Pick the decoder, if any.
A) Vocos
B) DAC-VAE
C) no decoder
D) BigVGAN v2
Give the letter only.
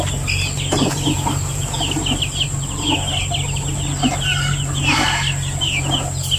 C